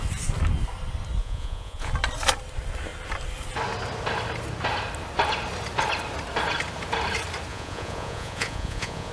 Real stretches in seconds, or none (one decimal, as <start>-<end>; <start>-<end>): 0.0-1.2; 1.9-7.5